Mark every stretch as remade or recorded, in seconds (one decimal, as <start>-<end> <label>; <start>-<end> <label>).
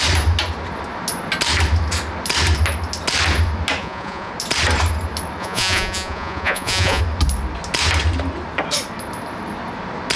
0.0-3.8 recorded; 3.8-4.3 remade; 4.3-5.4 recorded; 5.4-7.0 remade; 7.0-10.2 recorded